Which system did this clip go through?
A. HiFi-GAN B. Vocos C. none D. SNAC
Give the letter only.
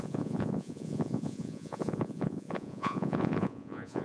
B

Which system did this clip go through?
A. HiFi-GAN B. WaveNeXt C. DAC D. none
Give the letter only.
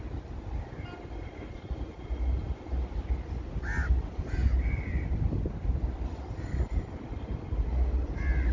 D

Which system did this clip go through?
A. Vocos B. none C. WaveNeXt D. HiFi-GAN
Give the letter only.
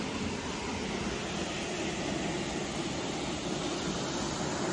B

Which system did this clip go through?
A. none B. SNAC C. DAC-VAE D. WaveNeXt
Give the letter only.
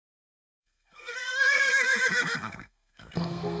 B